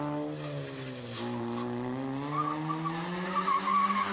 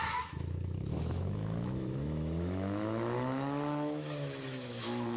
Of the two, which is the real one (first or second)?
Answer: first